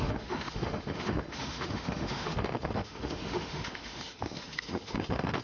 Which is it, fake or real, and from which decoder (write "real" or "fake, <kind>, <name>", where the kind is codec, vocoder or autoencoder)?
fake, autoencoder, DAC-VAE